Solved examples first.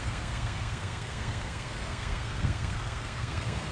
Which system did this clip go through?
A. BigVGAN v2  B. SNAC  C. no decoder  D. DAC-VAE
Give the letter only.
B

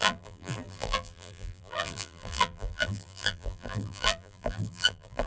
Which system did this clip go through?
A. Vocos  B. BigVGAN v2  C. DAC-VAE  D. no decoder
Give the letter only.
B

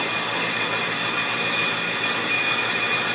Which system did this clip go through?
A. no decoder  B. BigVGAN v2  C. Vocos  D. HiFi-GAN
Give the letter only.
A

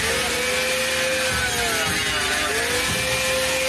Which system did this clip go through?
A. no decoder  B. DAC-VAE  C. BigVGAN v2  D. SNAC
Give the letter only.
A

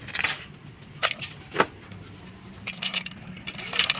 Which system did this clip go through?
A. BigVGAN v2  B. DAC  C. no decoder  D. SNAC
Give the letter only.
C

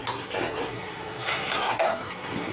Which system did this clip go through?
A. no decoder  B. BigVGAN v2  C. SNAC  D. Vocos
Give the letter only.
C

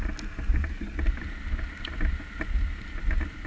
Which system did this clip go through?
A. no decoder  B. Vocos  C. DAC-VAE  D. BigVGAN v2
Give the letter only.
A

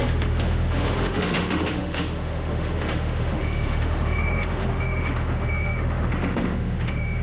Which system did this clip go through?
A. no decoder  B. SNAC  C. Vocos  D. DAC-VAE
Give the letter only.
D